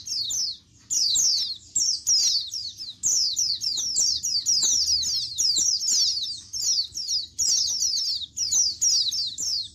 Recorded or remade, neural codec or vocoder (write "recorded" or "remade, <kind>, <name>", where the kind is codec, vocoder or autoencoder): recorded